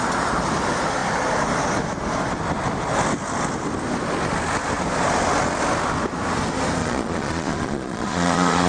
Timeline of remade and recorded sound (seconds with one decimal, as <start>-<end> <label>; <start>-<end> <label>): 0.0-6.8 recorded; 6.8-8.7 remade